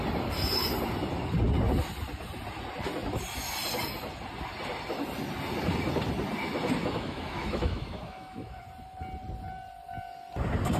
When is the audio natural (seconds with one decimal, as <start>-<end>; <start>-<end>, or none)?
0.0-6.8; 8.6-10.8